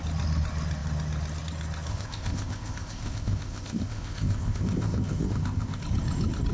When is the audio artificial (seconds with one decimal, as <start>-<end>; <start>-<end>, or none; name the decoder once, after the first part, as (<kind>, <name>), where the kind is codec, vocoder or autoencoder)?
1.9-5.8 (codec, ZipCodec)